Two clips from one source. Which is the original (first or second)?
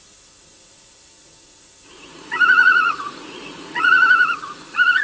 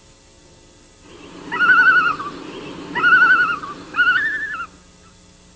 second